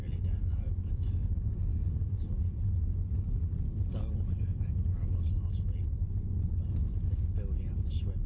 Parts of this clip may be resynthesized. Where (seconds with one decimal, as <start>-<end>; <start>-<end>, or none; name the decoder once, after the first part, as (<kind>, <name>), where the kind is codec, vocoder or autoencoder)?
6.0-6.5 (vocoder, Vocos)

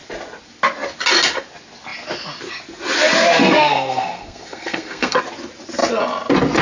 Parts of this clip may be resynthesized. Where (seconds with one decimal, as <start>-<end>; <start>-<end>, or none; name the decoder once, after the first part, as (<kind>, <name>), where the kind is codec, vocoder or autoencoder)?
3.4-5.2 (codec, SNAC)

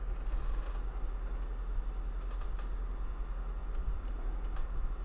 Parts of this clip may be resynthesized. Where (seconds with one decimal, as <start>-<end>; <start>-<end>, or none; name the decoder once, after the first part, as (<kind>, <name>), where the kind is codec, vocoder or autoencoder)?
3.6-4.3 (vocoder, BigVGAN v2)